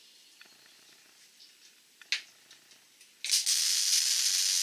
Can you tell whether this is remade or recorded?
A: recorded